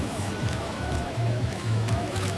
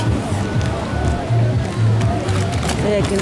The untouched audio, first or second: second